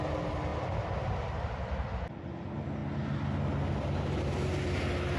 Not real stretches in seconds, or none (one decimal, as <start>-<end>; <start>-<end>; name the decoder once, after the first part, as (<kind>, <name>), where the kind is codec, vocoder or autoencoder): none